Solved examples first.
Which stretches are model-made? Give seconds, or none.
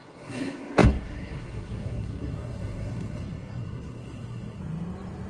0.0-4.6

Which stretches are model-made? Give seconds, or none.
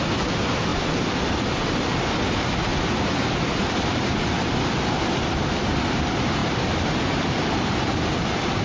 0.7-1.6; 2.7-4.0; 6.4-8.2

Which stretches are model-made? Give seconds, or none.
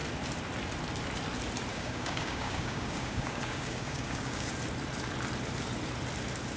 1.7-4.5